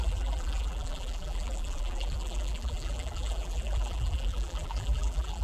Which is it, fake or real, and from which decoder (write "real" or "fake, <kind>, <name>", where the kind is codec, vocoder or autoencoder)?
fake, vocoder, BigVGAN v2